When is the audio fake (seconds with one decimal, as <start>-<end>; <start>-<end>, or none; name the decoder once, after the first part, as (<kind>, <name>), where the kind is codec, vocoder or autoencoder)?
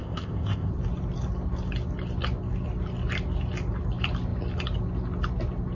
0.0-0.7 (codec, ZipCodec)